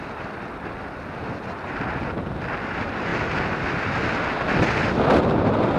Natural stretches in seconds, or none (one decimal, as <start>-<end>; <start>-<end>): 0.0-5.8

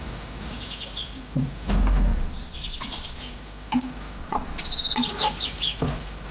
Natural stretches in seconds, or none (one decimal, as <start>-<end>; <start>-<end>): 0.0-2.1; 3.2-4.2; 5.1-6.3

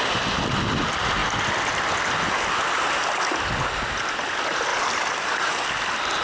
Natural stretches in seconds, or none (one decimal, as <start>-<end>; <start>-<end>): 0.0-4.7; 5.5-6.2